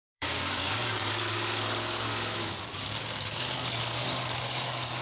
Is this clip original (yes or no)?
no